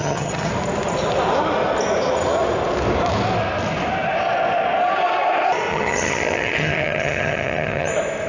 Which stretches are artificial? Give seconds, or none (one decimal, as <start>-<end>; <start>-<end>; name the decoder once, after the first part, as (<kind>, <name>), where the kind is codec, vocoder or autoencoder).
0.0-0.5 (vocoder, HiFi-GAN); 5.7-7.9